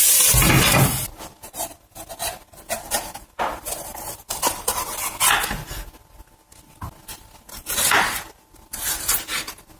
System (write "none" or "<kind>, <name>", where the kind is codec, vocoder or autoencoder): none